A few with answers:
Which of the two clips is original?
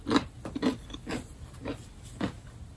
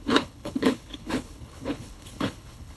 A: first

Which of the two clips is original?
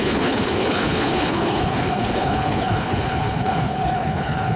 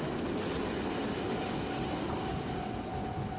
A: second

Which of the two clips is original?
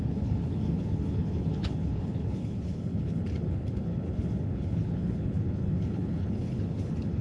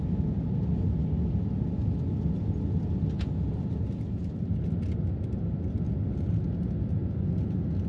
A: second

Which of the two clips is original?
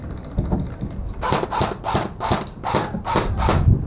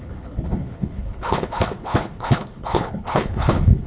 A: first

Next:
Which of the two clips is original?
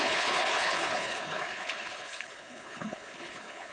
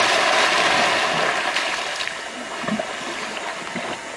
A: second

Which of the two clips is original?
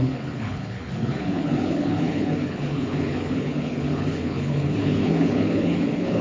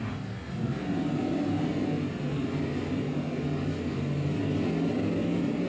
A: second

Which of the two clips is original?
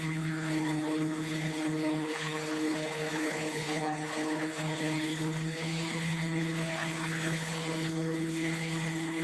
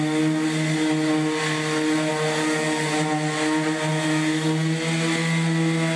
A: second